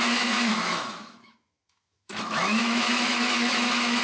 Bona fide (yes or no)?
no